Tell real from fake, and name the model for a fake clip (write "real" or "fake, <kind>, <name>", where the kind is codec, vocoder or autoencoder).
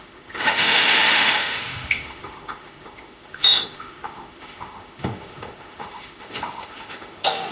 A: fake, autoencoder, DAC-VAE